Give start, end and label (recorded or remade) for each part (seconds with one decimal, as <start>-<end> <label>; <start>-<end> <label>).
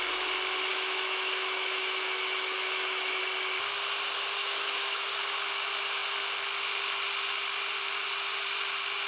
0.0-0.7 recorded; 0.7-3.2 remade; 3.2-4.4 recorded; 4.4-5.1 remade; 5.1-9.1 recorded